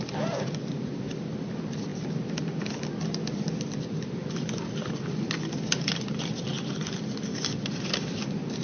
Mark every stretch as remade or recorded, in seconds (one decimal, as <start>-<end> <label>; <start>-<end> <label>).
0.0-8.6 recorded

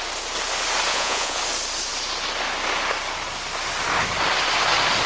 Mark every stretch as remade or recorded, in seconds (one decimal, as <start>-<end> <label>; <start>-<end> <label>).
0.0-0.9 recorded; 0.9-1.4 remade; 1.4-5.1 recorded

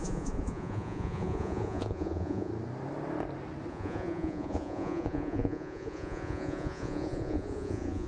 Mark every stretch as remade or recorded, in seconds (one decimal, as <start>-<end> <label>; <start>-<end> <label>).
0.0-2.5 remade; 2.5-3.7 recorded; 3.7-8.1 remade

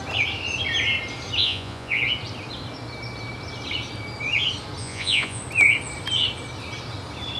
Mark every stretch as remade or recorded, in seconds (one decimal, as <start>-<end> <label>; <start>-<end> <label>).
0.0-1.4 recorded; 1.4-2.0 remade; 2.0-4.8 recorded; 4.8-5.4 remade; 5.4-7.4 recorded

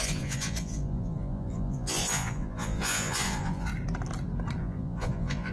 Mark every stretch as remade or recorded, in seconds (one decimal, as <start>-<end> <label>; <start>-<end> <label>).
0.0-3.7 remade; 3.7-4.6 recorded; 4.6-5.5 remade

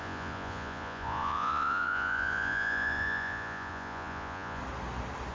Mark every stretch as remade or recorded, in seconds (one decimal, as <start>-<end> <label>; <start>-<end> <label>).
0.0-4.6 remade; 4.6-5.3 recorded